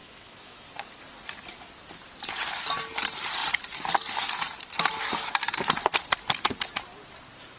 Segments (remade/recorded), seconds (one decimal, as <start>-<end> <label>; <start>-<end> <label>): 0.0-0.7 remade; 0.7-7.6 recorded